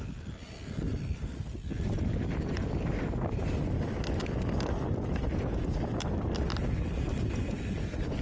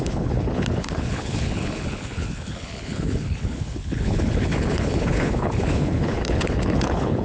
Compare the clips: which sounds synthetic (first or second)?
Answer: second